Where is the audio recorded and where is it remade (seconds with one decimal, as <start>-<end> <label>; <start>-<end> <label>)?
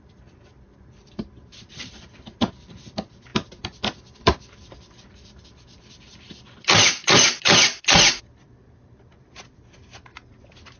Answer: 0.0-10.8 remade